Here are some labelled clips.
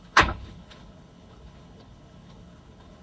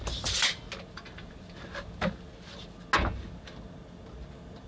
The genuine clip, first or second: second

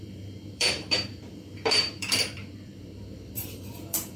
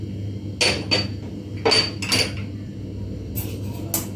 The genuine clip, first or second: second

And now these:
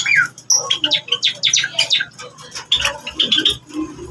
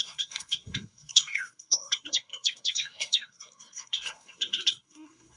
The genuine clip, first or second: first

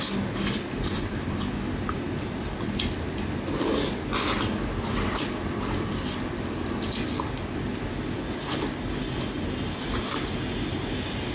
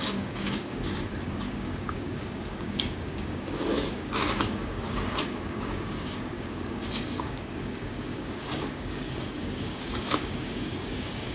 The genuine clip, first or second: first